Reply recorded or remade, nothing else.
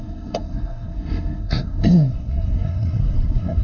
remade